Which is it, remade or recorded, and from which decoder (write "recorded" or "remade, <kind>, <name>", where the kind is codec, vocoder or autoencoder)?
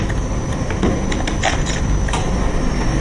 recorded